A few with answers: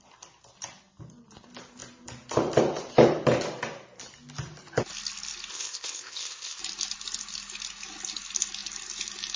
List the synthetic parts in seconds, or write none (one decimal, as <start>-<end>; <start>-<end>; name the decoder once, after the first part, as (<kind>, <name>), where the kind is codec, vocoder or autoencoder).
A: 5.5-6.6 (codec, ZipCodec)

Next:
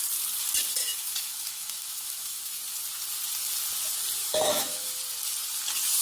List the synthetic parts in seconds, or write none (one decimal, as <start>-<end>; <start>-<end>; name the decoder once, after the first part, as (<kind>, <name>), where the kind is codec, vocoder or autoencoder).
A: 0.8-2.6 (autoencoder, DAC-VAE); 4.2-4.9

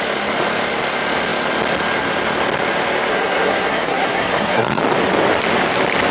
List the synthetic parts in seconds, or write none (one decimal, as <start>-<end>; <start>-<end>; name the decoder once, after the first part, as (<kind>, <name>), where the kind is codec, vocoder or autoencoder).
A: 3.1-4.8 (codec, SNAC)

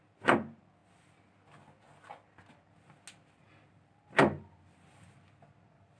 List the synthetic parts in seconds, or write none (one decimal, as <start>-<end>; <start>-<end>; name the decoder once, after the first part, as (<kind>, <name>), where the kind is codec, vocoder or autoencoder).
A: none

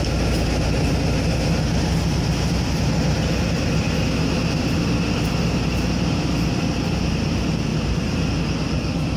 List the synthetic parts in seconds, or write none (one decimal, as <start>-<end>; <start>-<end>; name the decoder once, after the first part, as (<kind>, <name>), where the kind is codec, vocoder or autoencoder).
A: 7.7-8.4 (vocoder, BigVGAN v2)